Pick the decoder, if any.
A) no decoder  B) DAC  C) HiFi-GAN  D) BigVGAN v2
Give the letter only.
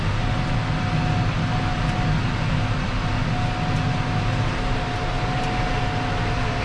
A